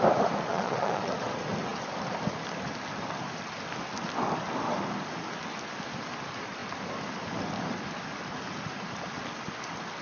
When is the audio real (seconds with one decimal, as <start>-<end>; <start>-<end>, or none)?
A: 0.0-0.5; 1.1-10.0